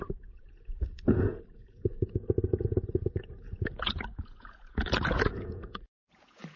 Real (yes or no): no